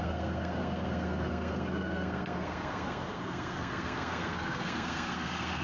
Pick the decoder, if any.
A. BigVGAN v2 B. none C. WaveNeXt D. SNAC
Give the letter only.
D